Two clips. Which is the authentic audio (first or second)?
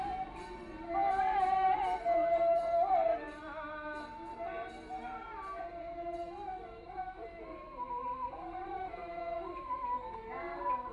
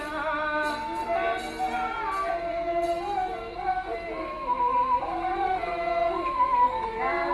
second